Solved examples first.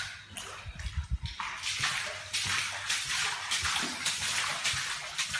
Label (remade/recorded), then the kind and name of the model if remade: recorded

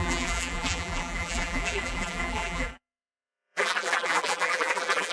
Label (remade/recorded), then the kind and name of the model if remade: remade, vocoder, BigVGAN v2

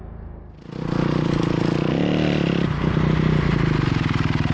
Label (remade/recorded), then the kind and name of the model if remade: recorded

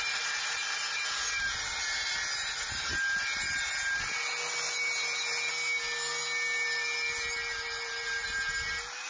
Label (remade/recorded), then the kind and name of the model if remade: recorded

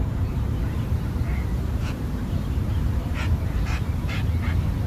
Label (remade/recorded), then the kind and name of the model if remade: remade, vocoder, BigVGAN v2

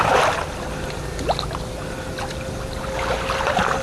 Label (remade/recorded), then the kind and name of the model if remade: recorded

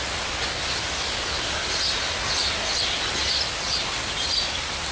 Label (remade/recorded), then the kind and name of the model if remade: recorded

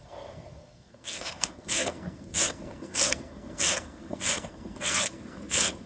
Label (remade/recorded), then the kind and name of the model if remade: remade, codec, SNAC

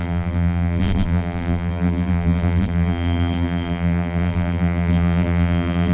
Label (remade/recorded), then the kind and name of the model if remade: remade, vocoder, BigVGAN v2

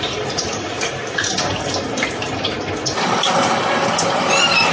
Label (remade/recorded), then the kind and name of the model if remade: recorded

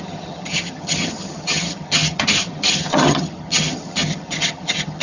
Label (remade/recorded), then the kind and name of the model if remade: remade, vocoder, HiFi-GAN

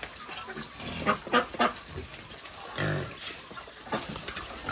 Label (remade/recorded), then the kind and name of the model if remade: recorded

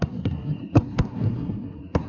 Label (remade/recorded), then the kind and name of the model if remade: remade, codec, SNAC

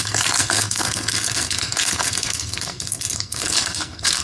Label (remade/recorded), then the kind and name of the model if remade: remade, codec, SNAC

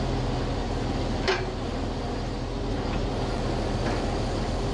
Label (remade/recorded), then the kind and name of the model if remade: recorded